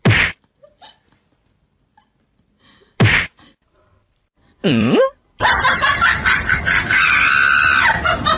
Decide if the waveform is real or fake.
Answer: fake